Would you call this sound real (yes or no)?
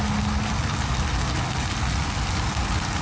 yes